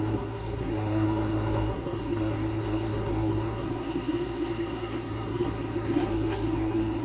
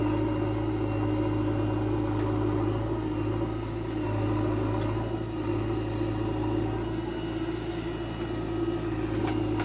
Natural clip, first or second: second